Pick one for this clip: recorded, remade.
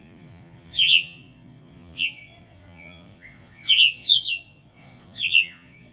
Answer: remade